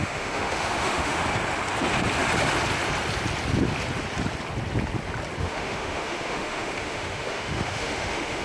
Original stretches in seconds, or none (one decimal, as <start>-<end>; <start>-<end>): 1.2-5.4